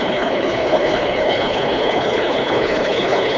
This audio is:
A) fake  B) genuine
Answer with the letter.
A